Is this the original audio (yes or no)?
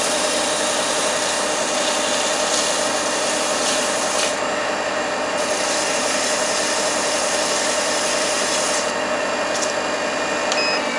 yes